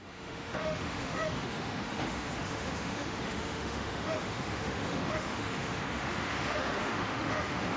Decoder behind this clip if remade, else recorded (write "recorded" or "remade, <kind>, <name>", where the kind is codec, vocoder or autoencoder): remade, autoencoder, DAC-VAE